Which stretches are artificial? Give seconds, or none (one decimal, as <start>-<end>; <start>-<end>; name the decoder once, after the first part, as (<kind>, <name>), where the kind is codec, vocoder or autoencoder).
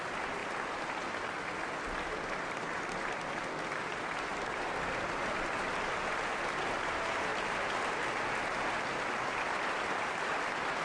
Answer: none